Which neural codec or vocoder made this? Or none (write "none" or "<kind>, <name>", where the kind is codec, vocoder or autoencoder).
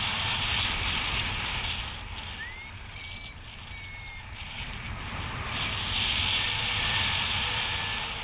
none